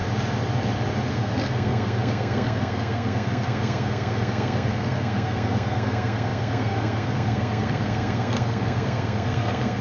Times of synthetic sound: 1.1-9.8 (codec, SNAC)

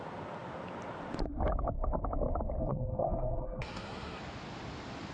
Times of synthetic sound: 2.6-4.2 (codec, SNAC)

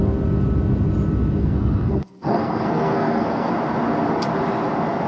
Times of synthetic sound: 1.4-3.5 (codec, SNAC)

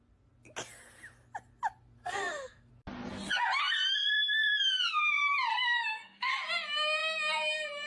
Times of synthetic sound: 2.0-2.7 (codec, SNAC); 5.5-6.3

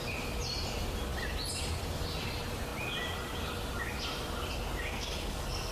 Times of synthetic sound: 4.9-5.7 (codec, SNAC)

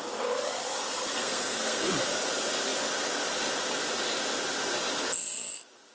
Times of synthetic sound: 1.2-1.9 (codec, SNAC)